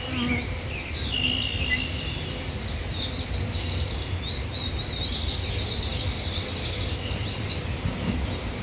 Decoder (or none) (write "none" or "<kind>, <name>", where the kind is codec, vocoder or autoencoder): none